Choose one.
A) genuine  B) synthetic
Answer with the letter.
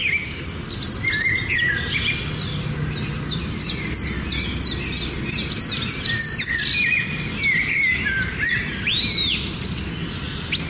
A